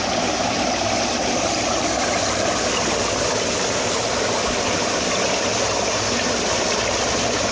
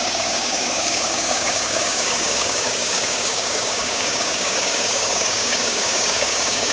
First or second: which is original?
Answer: first